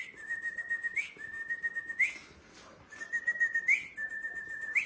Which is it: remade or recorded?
recorded